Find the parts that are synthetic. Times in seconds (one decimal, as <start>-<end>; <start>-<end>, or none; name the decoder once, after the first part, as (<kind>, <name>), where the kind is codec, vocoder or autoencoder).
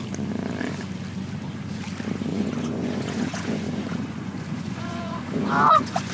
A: 2.3-6.1 (vocoder, Vocos)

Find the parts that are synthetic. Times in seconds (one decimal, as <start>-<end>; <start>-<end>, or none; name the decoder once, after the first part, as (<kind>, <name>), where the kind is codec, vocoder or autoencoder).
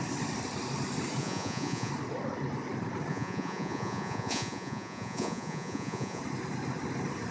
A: 1.2-1.9 (vocoder, Vocos); 3.1-6.2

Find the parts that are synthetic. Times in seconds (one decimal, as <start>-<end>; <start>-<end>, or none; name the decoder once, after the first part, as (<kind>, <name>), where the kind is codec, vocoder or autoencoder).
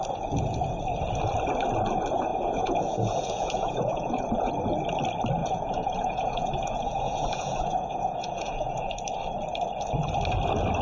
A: 2.3-4.5 (vocoder, Vocos); 5.4-8.9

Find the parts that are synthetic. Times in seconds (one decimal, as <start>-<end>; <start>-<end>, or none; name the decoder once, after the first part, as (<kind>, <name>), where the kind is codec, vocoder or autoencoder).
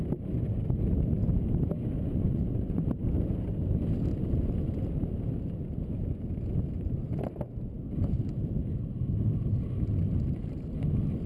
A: 2.1-2.8 (vocoder, Vocos)